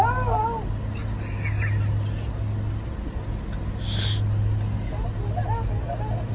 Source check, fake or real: real